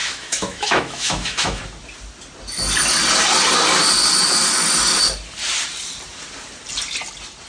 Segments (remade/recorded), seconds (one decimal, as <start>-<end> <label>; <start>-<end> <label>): 0.0-1.6 remade; 1.6-7.5 recorded